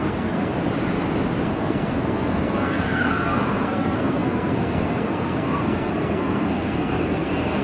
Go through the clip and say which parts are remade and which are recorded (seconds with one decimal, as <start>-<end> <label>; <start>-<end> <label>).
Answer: 0.0-0.5 remade; 0.5-1.4 recorded; 1.4-7.6 remade